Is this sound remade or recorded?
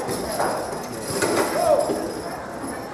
recorded